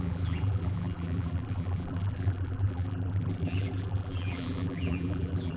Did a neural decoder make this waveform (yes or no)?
yes